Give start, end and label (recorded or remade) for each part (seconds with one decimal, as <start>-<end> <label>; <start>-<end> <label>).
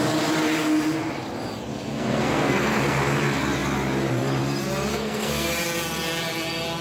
0.0-1.7 recorded; 1.7-3.0 remade; 3.0-4.9 recorded; 4.9-5.5 remade; 5.5-6.8 recorded